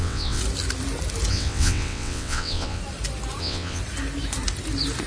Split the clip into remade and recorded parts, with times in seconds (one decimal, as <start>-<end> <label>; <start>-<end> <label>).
0.0-0.4 remade; 0.4-1.3 recorded; 1.3-2.8 remade; 2.8-3.4 recorded; 3.4-3.8 remade; 3.8-5.1 recorded